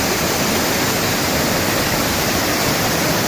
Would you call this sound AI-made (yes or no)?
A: yes